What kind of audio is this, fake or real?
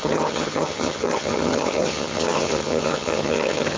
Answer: fake